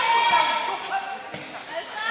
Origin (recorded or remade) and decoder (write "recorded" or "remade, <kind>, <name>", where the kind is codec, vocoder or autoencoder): recorded